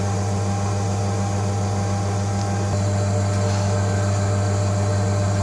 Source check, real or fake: real